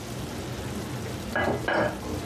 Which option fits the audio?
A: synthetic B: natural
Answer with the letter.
B